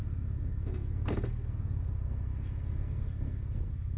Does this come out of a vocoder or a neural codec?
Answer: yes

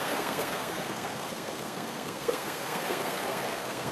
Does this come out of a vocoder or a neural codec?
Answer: yes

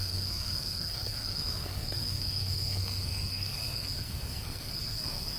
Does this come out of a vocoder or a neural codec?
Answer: yes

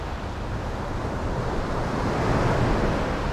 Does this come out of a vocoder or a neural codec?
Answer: no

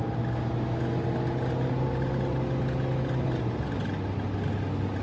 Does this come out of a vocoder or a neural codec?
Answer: no